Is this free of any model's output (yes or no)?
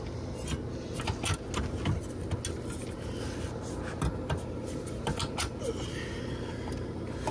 yes